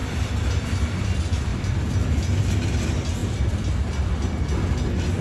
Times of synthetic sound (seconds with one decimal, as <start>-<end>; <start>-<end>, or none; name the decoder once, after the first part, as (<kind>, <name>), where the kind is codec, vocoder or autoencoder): 0.0-0.6 (vocoder, BigVGAN v2); 1.5-2.4; 3.2-4.4